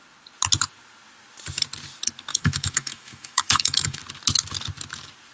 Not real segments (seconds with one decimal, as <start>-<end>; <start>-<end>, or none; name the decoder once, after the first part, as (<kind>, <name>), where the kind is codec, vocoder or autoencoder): 2.3-4.0 (autoencoder, DAC-VAE)